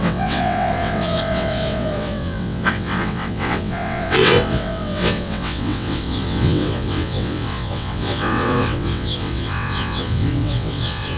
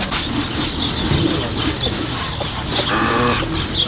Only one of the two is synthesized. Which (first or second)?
first